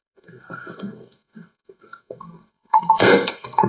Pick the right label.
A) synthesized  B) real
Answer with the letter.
A